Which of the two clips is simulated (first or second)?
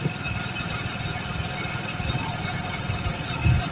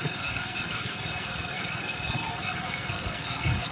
second